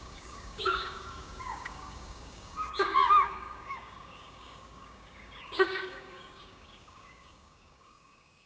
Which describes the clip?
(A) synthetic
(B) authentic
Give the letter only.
A